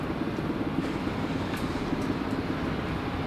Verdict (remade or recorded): recorded